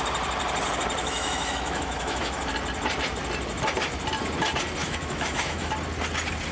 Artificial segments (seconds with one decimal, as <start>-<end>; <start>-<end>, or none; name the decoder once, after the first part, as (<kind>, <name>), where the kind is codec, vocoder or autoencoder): 1.0-2.4 (autoencoder, DAC-VAE); 4.8-5.7

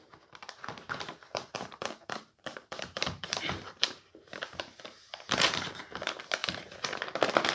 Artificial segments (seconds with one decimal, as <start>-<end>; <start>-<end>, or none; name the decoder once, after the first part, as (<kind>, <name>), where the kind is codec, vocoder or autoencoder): 1.3-5.8 (vocoder, BigVGAN v2); 6.4-7.0

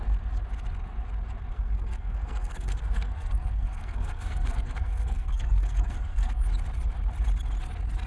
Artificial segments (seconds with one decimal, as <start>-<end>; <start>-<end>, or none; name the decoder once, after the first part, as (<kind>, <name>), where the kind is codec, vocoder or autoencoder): 1.5-6.4 (codec, SNAC)

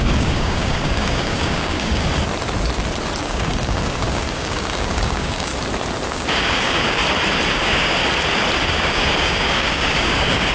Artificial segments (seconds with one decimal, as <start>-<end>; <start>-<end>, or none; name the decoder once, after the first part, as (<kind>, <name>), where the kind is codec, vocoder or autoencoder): 0.0-2.1 (codec, DAC); 3.2-5.5; 6.1-7.0; 7.5-8.0; 8.7-10.5

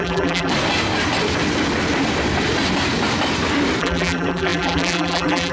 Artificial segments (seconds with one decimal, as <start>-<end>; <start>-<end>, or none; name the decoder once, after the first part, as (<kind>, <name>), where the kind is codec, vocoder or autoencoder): 0.0-0.5 (vocoder, BigVGAN v2); 3.8-5.5

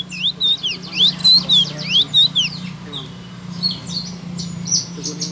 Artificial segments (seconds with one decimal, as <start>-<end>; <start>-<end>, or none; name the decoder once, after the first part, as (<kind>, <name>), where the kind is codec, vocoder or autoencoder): none

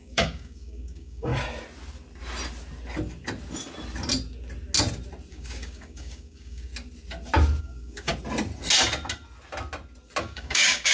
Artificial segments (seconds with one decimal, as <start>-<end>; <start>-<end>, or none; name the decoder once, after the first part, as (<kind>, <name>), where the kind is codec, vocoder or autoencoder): 0.0-1.3 (codec, DAC); 5.3-6.7; 7.6-8.1; 10.2-10.9

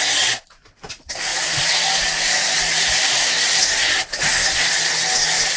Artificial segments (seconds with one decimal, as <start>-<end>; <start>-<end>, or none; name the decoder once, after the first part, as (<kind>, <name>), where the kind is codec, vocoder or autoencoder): none